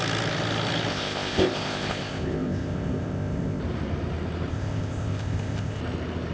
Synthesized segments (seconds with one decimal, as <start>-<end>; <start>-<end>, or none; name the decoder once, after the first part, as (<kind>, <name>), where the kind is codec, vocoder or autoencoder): 0.9-3.6 (codec, ZipCodec); 4.5-5.8